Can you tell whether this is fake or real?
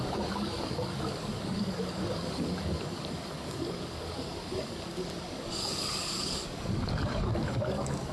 fake